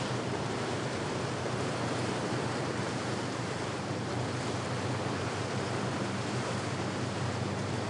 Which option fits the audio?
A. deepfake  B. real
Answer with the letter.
A